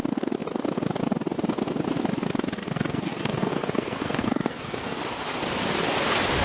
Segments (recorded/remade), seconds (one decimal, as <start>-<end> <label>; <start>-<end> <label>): 0.0-2.6 recorded; 2.6-5.0 remade; 5.0-6.4 recorded